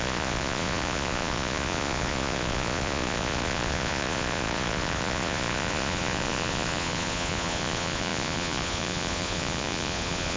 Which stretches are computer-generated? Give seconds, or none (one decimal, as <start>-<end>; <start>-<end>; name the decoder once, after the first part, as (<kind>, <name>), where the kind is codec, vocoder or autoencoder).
0.0-10.4 (vocoder, Vocos)